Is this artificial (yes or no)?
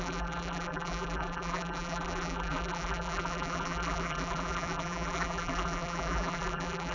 yes